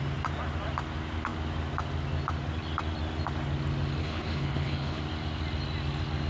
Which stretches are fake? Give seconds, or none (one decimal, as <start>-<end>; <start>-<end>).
4.0-5.0